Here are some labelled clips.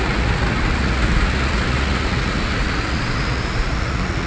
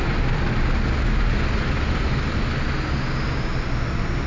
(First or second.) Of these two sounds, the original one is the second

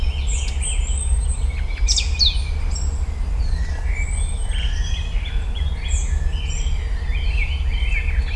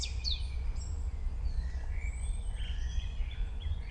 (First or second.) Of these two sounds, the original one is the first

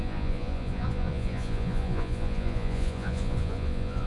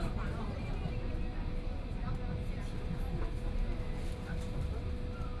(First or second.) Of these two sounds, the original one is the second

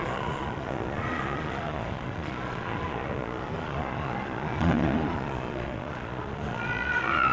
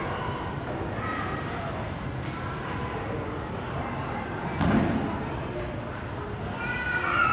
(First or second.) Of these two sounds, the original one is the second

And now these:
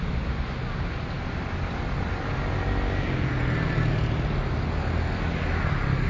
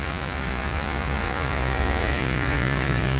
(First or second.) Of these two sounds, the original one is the first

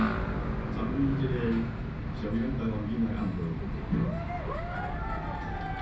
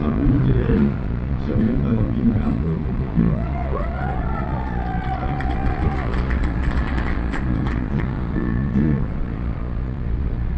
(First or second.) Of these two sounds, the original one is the first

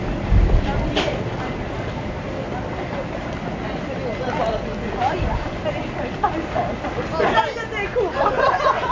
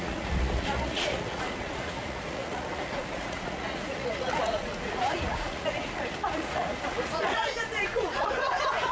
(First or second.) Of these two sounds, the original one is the first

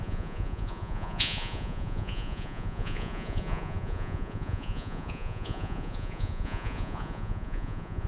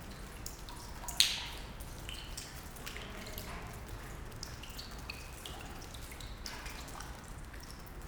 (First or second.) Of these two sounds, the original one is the second